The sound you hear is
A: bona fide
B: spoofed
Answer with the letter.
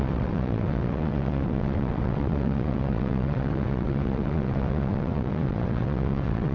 B